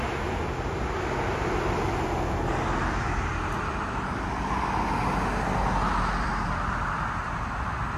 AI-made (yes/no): no